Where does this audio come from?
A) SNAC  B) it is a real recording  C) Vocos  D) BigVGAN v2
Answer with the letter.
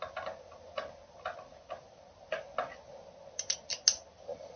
B